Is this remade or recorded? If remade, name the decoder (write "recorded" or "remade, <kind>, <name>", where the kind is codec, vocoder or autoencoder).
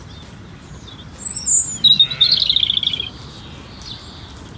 recorded